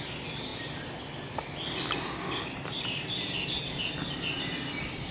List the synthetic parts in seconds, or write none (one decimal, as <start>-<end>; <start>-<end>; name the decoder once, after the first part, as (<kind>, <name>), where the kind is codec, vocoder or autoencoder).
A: none